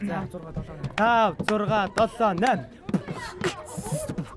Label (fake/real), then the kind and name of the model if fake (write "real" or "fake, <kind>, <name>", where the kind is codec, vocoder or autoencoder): real